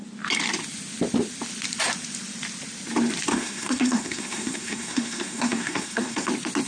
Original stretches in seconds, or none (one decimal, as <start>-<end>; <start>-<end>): 0.0-3.3; 6.3-6.7